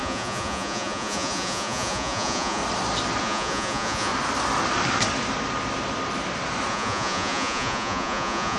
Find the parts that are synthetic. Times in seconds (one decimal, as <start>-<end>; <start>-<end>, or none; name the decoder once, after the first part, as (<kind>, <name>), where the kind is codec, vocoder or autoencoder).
0.0-2.6 (vocoder, Vocos); 3.2-4.1; 6.7-8.6